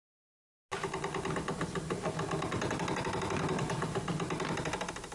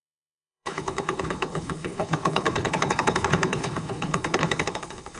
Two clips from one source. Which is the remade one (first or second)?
second